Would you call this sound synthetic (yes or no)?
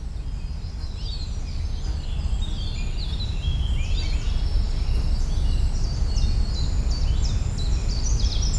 no